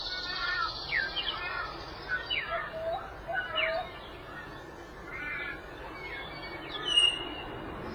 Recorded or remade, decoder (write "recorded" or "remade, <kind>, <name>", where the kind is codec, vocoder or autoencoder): recorded